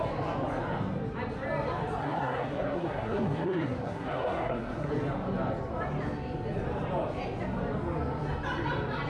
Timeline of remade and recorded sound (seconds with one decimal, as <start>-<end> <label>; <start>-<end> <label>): 0.0-2.0 recorded; 2.0-4.9 remade; 4.9-9.1 recorded